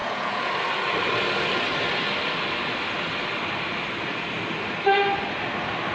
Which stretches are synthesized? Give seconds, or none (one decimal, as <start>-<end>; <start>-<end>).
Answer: 0.0-0.5